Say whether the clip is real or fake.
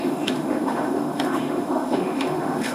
fake